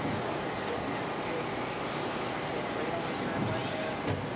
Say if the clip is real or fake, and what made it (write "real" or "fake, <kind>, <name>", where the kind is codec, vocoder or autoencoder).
real